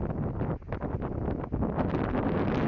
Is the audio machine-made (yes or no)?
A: no